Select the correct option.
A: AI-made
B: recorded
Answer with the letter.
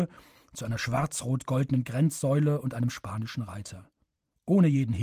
B